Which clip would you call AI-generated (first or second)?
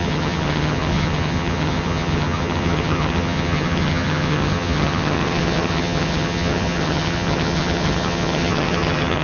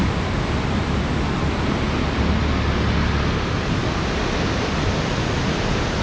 first